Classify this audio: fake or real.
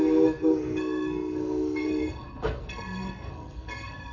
fake